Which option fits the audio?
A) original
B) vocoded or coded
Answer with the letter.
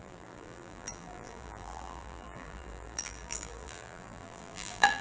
B